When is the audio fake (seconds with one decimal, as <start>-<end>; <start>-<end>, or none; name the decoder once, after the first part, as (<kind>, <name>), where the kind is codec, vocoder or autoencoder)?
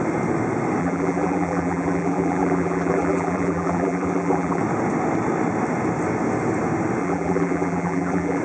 0.8-4.6 (vocoder, BigVGAN v2); 7.0-8.4